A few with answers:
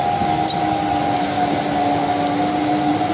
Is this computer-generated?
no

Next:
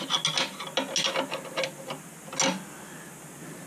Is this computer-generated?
no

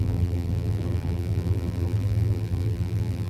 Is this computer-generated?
yes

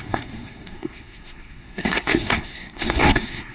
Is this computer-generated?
yes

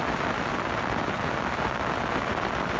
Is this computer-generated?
no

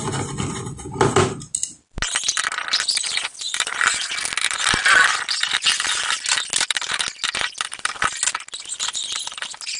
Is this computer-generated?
no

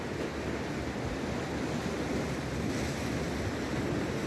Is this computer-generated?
no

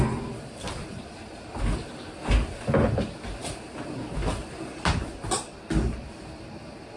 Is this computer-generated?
no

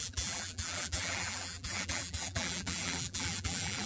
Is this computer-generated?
yes